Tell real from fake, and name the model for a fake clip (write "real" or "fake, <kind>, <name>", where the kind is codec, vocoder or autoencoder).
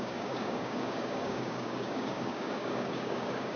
fake, codec, DAC